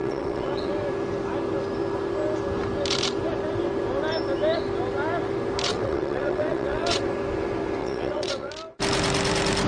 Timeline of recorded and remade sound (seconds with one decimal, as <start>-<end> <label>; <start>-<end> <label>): 0.0-0.7 remade; 0.7-5.7 recorded; 5.7-7.0 remade; 7.0-7.8 recorded; 7.8-8.5 remade; 8.5-9.7 recorded